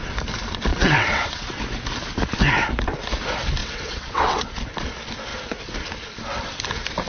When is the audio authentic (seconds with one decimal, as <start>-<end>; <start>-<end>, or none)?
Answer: 0.0-0.7; 1.6-3.6; 4.5-7.1